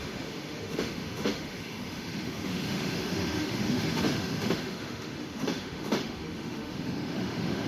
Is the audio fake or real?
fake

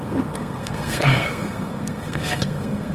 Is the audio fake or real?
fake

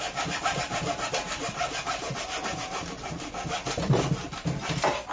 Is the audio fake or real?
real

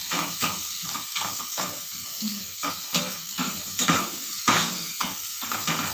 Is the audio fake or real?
fake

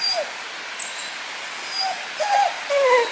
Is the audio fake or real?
real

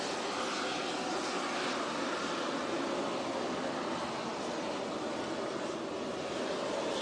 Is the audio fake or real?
real